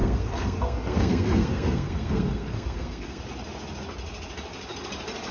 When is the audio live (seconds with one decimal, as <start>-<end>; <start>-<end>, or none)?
3.2-5.3